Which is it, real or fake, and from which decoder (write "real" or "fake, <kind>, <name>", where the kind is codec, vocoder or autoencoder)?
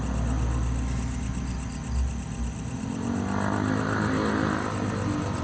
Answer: real